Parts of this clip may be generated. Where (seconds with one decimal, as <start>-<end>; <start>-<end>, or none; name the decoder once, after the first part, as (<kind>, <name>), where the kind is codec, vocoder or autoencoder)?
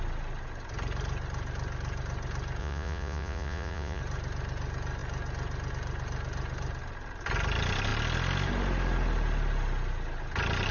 2.6-4.0 (vocoder, Vocos)